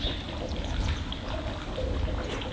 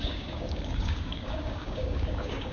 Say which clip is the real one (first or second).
first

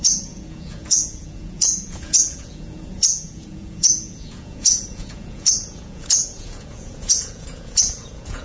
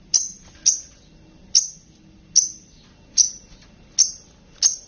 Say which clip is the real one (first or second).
second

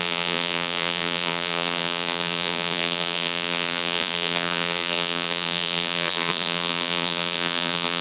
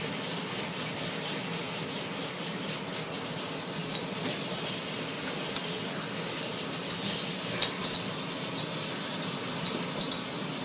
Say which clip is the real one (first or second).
second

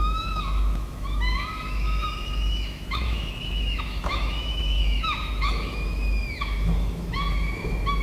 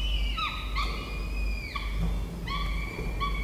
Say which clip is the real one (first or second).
second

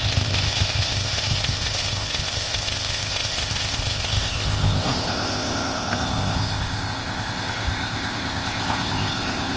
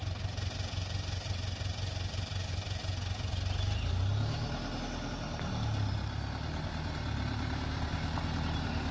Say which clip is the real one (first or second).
second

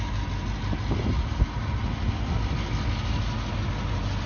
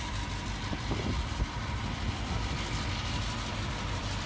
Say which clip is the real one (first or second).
first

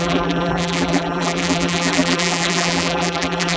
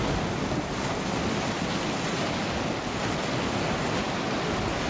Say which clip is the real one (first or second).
second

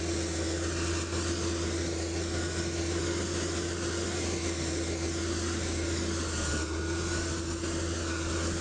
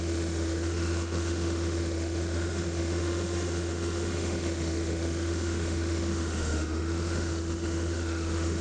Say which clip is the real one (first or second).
first